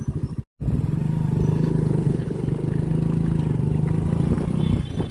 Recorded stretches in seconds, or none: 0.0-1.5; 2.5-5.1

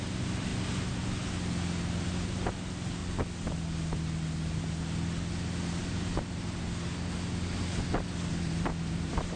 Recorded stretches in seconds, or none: 0.5-2.1; 3.0-5.8; 6.9-8.3

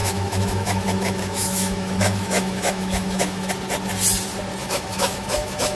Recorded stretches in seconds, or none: 3.5-4.6

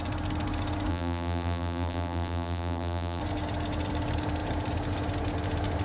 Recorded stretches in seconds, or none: 0.0-0.9; 3.2-5.8